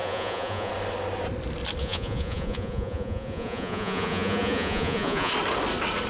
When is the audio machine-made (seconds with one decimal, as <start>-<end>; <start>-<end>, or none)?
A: 0.0-0.7; 1.8-5.3